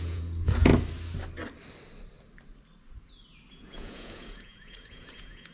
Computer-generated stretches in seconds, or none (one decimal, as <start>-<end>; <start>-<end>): 0.0-0.7; 3.5-5.5